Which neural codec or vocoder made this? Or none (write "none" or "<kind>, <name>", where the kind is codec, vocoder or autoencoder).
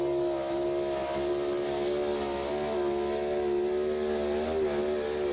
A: none